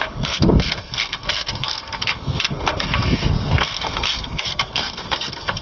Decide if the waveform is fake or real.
fake